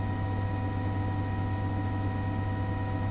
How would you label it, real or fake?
real